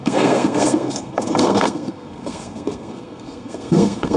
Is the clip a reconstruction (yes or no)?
yes